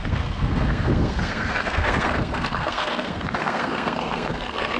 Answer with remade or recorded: remade